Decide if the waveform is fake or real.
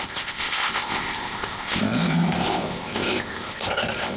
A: fake